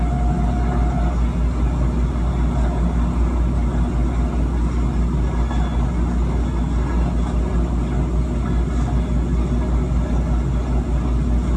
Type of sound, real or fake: real